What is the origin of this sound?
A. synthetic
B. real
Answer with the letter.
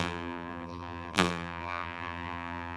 A